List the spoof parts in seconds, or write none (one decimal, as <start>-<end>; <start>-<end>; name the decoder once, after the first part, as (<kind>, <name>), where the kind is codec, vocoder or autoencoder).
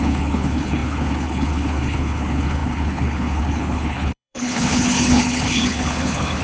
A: 0.0-6.4 (codec, HILCodec)